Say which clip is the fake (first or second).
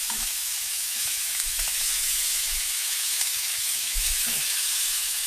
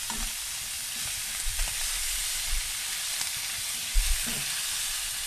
first